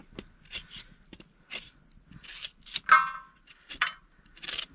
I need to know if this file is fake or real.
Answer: real